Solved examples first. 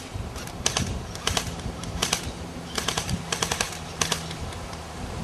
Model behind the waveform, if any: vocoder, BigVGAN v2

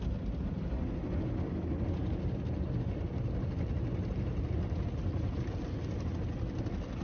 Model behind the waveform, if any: none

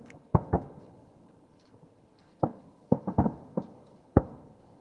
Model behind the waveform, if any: codec, SNAC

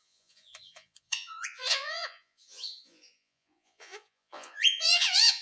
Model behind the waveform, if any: vocoder, Vocos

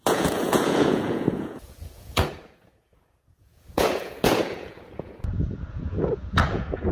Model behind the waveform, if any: vocoder, Vocos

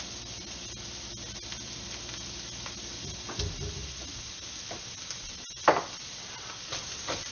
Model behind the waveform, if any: none